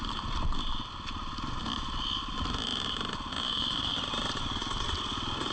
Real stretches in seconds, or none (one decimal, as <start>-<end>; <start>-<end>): 0.0-5.5